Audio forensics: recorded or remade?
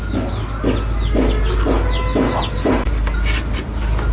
recorded